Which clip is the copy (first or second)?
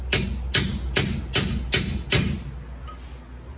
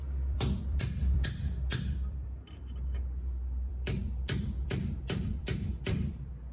second